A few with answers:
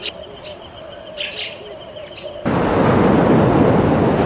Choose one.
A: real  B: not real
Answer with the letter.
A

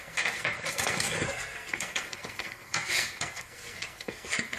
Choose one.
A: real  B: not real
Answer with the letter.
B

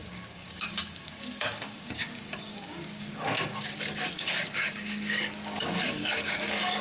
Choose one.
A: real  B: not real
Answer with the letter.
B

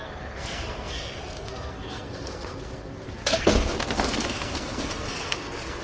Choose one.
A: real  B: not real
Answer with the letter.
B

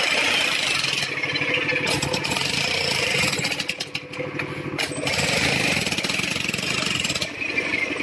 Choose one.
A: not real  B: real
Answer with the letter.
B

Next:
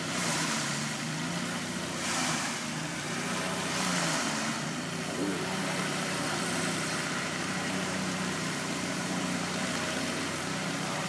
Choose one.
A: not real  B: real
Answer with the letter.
A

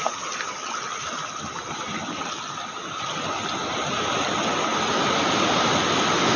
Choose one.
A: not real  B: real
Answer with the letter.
B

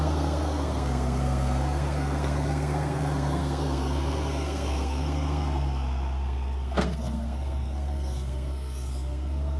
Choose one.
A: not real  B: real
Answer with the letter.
A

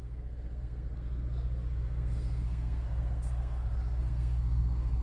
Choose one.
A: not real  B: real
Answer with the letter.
A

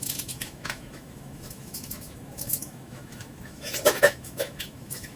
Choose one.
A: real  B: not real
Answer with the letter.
B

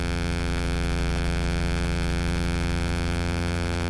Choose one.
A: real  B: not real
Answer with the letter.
B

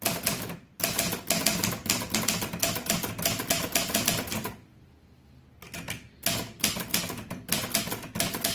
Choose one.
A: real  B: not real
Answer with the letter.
A